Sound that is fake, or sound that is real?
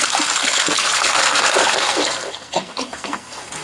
fake